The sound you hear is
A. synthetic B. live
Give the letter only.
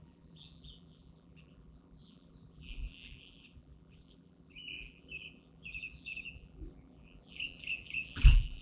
A